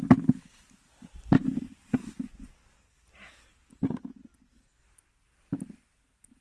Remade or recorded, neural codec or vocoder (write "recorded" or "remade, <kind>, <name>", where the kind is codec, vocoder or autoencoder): recorded